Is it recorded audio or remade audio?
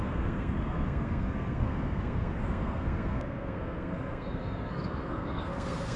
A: remade